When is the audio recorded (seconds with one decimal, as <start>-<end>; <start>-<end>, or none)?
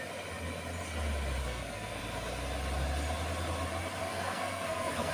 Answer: 0.0-1.4; 2.0-4.0